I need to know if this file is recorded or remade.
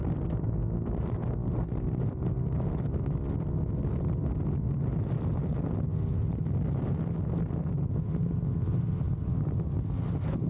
recorded